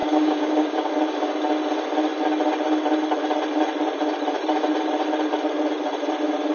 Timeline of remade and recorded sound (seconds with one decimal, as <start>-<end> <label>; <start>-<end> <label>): 0.0-0.9 remade; 0.9-6.5 recorded